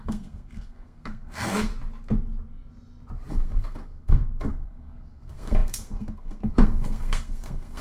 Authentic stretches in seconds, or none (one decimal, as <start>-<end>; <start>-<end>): 1.7-3.3